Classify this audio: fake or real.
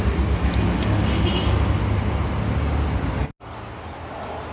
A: real